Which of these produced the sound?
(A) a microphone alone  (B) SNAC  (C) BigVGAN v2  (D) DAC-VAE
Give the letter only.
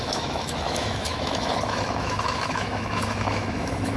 D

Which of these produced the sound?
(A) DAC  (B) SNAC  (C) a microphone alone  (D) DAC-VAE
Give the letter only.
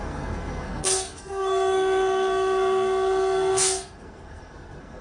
B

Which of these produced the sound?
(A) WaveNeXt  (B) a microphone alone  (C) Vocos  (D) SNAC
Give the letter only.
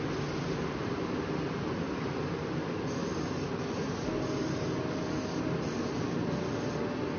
B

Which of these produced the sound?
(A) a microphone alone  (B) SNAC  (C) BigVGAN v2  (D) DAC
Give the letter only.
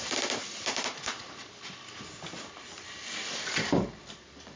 C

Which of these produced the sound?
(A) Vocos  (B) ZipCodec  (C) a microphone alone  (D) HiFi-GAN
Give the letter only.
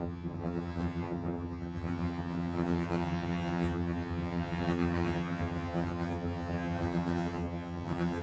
D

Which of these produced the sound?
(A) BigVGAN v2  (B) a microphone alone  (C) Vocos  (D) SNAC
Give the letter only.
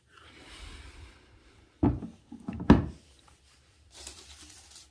B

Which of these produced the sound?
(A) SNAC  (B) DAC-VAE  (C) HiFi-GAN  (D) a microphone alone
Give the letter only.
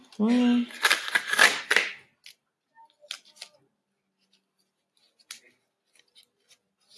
D